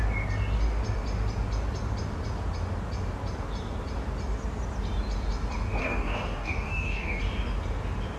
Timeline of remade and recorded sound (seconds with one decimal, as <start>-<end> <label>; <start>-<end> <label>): 0.0-5.8 recorded; 5.8-7.2 remade; 7.2-8.2 recorded